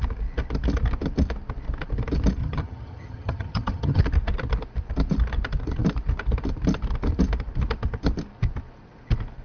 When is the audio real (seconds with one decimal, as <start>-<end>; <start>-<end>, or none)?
0.0-2.4; 4.0-9.4